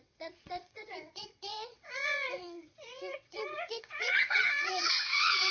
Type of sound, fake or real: fake